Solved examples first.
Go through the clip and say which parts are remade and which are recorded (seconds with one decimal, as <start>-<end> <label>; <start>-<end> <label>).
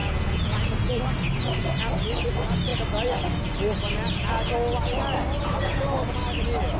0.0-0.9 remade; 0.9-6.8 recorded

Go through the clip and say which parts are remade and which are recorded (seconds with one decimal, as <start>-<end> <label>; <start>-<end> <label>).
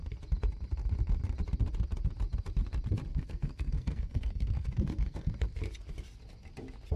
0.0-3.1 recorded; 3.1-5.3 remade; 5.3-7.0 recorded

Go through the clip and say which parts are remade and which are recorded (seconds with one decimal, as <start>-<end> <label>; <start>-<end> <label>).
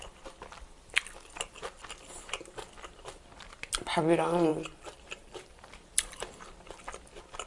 0.0-4.5 recorded; 4.5-5.7 remade; 5.7-7.5 recorded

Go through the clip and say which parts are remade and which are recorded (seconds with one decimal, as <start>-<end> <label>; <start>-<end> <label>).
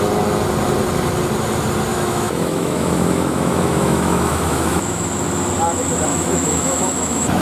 0.0-1.9 recorded; 1.9-5.1 remade; 5.1-6.1 recorded; 6.1-7.4 remade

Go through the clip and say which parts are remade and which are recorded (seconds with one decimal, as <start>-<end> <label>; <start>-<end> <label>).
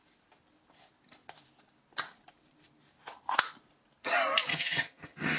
0.0-4.5 recorded; 4.5-5.4 remade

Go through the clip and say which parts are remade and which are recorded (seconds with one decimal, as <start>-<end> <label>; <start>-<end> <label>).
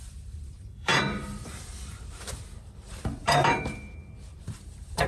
0.0-5.1 remade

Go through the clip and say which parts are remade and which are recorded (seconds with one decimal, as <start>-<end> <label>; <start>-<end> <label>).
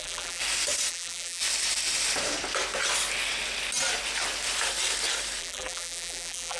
0.0-0.4 remade; 0.4-0.9 recorded; 0.9-1.4 remade; 1.4-5.4 recorded; 5.4-6.6 remade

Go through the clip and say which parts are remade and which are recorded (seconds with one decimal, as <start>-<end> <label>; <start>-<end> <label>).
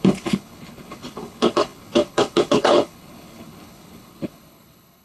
0.0-5.0 remade